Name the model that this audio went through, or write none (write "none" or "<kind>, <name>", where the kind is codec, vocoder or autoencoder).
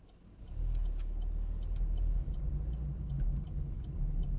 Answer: none